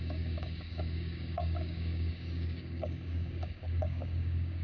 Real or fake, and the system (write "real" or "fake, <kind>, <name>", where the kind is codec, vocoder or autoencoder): fake, codec, DAC